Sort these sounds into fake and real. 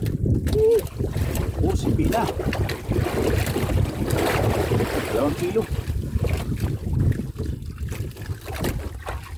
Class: real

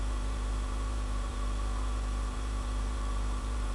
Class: fake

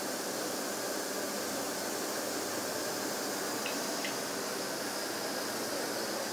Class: real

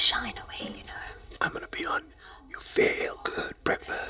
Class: real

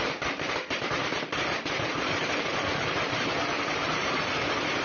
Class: fake